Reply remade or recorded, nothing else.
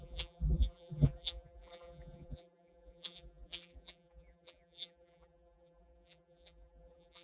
remade